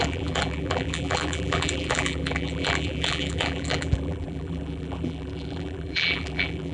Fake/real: fake